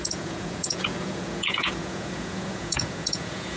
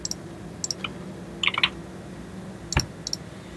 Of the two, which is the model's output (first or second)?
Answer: first